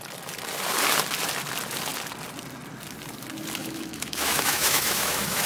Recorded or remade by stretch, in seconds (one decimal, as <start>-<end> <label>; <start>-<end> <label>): 0.0-3.6 recorded; 3.6-5.5 remade